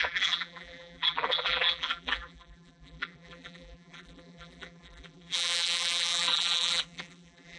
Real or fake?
fake